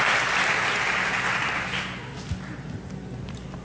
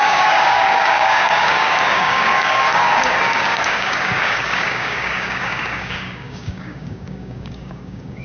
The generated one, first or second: second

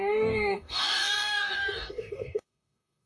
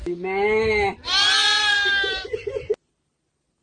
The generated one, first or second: first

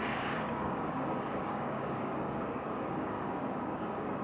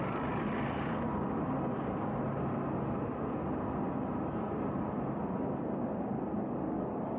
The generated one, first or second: first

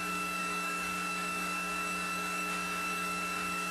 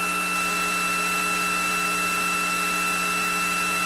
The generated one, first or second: first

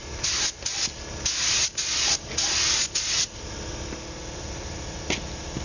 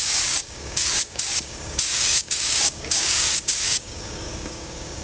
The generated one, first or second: second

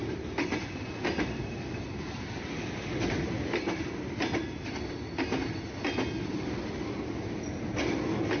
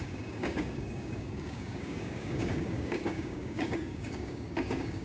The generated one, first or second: second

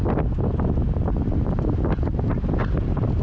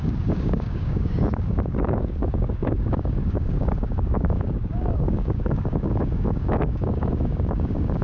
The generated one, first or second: second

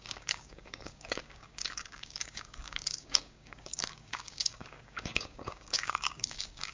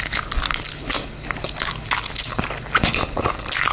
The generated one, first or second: first